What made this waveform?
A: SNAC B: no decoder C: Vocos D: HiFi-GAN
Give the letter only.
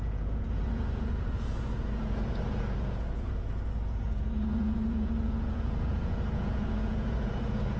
C